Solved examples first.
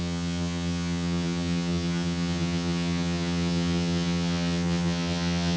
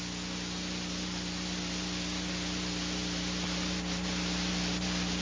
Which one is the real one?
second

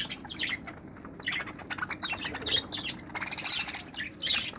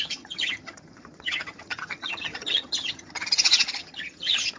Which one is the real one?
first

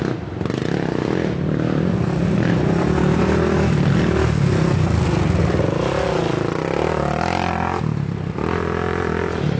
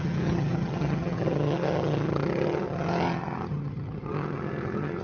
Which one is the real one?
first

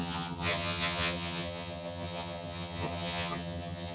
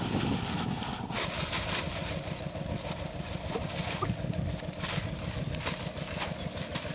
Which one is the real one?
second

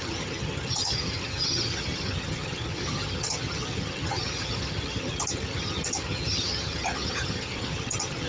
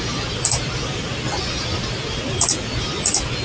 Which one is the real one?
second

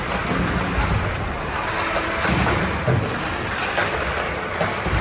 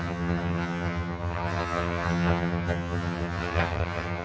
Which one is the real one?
first